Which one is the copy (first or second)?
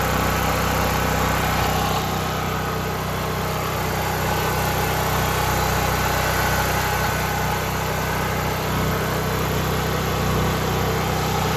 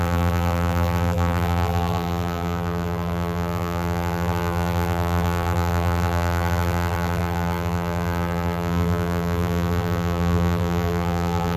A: second